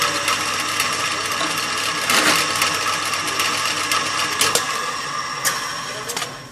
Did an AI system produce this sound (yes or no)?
no